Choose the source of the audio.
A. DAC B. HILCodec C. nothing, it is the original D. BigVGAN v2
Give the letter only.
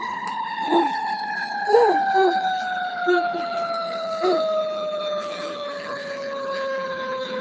B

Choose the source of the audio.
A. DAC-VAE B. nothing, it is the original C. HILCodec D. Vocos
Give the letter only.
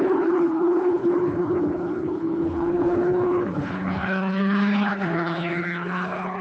C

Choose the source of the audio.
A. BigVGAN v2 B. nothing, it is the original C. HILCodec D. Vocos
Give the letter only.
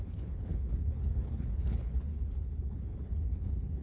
C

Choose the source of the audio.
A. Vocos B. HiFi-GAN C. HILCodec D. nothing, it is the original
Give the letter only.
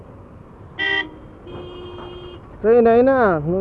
D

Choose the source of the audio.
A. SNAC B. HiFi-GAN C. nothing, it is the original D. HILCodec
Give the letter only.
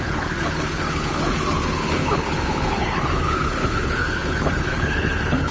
D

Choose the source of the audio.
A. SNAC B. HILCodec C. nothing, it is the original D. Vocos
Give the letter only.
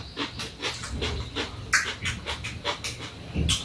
C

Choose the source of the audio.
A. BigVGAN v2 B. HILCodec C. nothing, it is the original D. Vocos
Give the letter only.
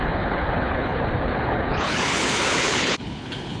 B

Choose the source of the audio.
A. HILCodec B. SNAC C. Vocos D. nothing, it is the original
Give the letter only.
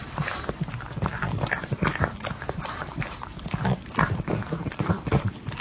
D